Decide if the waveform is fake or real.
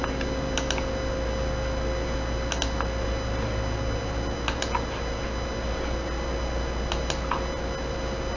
real